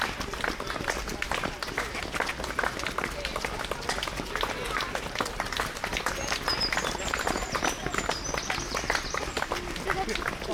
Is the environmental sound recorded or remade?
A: recorded